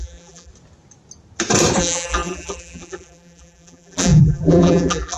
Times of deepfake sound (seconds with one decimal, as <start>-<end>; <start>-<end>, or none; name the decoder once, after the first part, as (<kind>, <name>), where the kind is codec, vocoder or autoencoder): 0.0-0.5 (vocoder, BigVGAN v2); 1.8-5.2